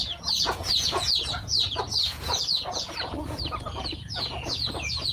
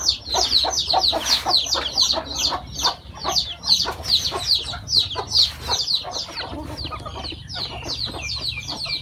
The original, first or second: second